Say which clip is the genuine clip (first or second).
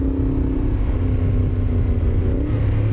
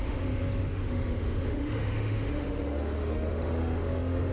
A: first